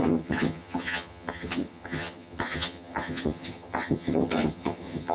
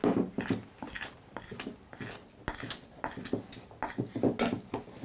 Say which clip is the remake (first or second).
first